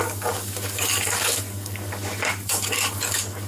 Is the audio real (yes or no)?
no